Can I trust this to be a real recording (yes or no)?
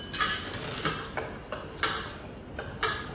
yes